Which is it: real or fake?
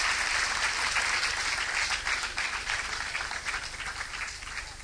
real